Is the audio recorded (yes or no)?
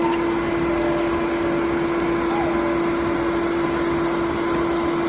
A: yes